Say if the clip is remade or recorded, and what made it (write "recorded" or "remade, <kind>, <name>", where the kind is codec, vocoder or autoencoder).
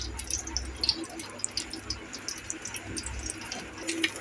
recorded